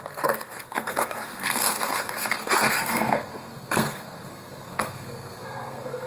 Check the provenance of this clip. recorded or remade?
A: remade